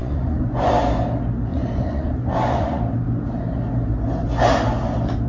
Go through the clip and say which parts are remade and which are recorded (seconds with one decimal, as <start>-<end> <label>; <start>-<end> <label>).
0.0-0.7 remade; 0.7-1.5 recorded; 1.5-2.8 remade; 2.8-5.3 recorded